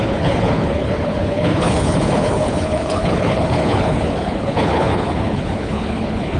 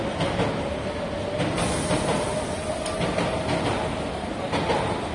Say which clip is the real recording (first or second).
second